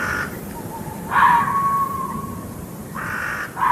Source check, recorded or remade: remade